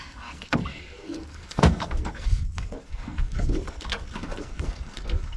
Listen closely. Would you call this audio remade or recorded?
remade